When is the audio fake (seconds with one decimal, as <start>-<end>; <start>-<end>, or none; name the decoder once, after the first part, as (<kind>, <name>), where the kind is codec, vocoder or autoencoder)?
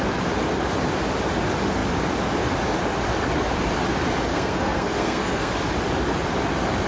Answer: 4.3-5.5 (codec, SNAC)